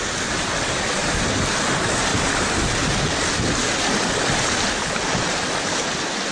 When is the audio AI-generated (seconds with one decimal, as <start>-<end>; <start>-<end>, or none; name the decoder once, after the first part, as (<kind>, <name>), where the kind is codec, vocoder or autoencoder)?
none